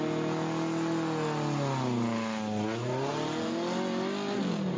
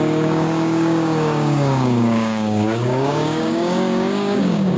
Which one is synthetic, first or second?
second